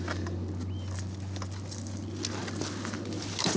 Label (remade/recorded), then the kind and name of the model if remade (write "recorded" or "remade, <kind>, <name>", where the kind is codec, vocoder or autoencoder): recorded